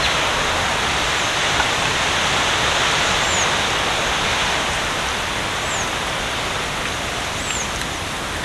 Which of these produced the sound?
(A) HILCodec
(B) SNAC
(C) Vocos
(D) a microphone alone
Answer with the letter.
D